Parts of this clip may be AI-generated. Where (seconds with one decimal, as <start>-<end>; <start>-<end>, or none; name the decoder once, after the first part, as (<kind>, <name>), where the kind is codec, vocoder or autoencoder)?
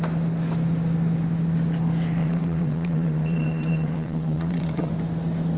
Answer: 2.2-4.9 (vocoder, WaveNeXt)